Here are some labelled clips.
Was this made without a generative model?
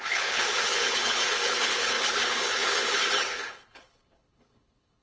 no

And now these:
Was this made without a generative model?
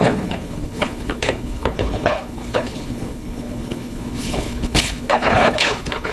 no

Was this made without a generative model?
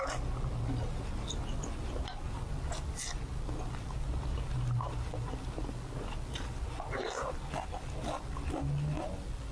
yes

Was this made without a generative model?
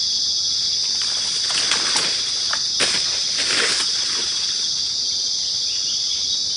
yes